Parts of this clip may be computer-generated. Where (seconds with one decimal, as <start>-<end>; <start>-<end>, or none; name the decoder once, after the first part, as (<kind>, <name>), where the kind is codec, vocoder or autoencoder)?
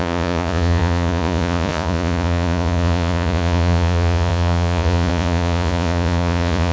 0.0-6.7 (vocoder, Vocos)